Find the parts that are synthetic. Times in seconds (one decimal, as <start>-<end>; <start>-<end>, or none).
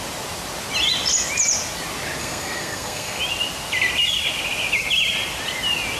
2.2-3.2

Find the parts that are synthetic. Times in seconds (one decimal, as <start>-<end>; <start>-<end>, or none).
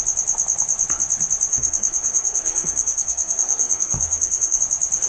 1.5-4.6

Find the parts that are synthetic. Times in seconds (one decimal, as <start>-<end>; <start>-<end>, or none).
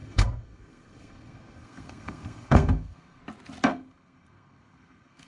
0.0-3.2; 3.7-5.3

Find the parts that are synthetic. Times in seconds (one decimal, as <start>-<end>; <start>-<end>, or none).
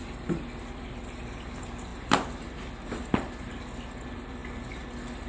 none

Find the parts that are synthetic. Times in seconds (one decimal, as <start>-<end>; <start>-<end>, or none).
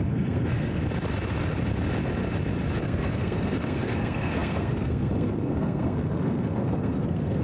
0.0-0.8; 2.8-7.4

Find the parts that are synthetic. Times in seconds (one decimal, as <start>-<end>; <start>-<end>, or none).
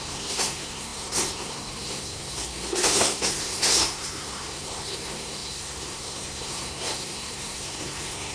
0.0-8.3